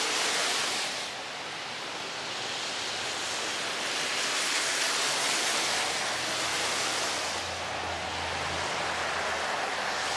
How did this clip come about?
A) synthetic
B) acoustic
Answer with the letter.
B